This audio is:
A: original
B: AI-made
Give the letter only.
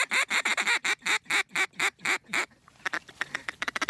A